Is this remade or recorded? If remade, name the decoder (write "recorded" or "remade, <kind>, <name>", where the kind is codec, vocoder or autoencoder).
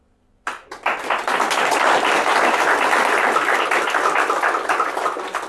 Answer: recorded